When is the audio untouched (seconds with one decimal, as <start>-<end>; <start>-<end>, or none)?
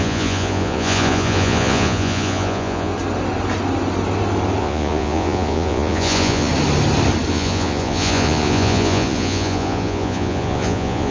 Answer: 2.9-4.6; 6.5-7.3